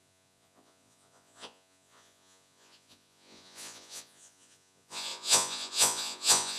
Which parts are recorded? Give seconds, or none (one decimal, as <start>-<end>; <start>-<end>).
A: none